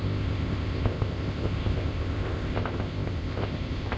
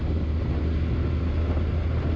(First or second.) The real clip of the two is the second